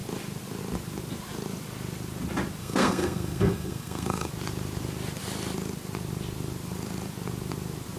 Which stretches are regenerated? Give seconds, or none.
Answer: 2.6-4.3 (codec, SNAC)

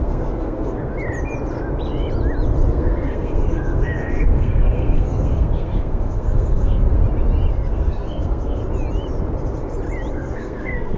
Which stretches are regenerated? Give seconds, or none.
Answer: 0.0-0.9 (codec, SNAC); 2.7-7.0; 7.5-8.6; 10.1-11.0

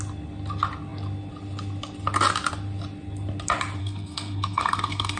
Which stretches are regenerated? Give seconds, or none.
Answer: 3.8-5.2 (codec, SNAC)

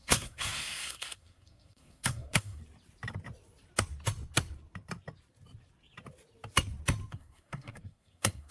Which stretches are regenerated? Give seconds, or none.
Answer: 0.0-2.6 (codec, SNAC); 7.1-8.5